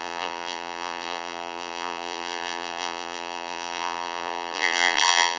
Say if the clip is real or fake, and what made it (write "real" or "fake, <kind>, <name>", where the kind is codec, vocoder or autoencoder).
fake, vocoder, BigVGAN v2